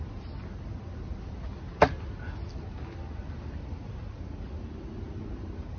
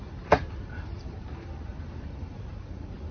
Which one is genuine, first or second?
first